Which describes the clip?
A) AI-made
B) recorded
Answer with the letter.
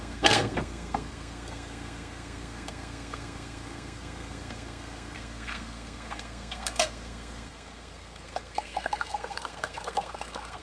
A